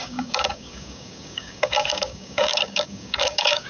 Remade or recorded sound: remade